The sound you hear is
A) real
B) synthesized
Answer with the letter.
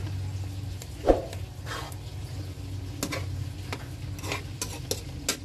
A